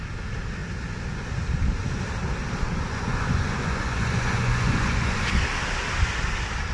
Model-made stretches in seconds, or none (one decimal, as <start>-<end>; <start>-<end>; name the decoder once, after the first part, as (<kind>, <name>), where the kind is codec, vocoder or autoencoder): 2.9-5.2 (vocoder, Vocos)